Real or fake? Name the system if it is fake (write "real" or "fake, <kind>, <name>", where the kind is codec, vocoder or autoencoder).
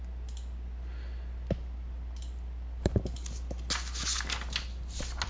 real